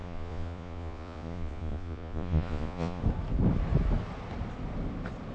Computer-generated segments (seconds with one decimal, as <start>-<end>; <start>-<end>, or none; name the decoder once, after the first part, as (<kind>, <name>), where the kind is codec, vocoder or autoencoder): 0.0-3.0 (vocoder, Vocos)